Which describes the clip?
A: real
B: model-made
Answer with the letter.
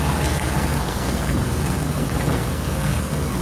B